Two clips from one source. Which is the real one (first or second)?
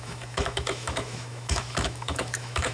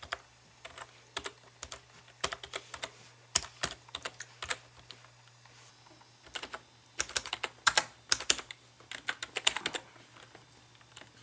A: second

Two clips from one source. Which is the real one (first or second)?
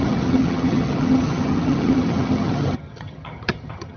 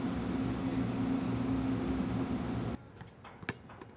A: second